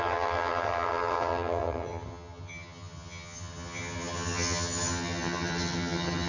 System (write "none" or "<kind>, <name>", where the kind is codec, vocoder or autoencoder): vocoder, HiFi-GAN